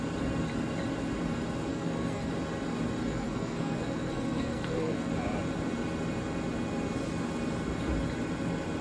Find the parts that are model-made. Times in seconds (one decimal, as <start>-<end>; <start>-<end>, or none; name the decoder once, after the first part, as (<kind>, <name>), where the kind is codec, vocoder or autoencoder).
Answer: 1.7-2.3 (codec, SNAC); 3.0-5.1